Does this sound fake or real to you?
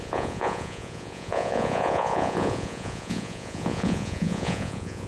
fake